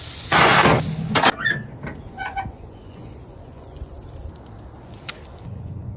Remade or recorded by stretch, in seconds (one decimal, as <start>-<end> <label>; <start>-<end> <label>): 0.0-0.5 remade; 0.5-2.1 recorded; 2.1-3.9 remade; 3.9-4.8 recorded; 4.8-6.0 remade